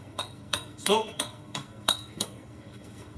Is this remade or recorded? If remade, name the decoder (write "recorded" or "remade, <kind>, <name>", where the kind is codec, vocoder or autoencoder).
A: remade, codec, SNAC